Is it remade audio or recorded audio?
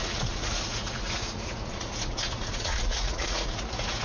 remade